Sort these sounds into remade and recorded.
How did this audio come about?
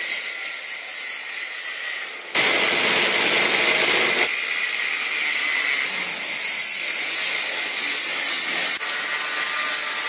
recorded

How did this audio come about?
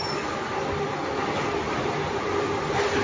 recorded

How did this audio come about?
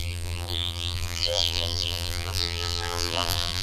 remade